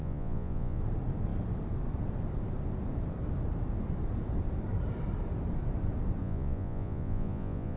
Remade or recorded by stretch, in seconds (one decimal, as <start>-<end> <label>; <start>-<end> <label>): 0.0-0.8 remade; 0.8-6.2 recorded; 6.2-7.8 remade